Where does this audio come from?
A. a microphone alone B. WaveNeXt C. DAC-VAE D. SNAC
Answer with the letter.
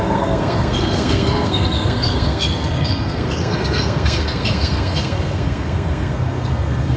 D